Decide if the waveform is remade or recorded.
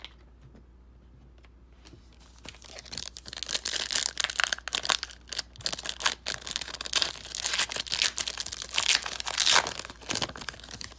recorded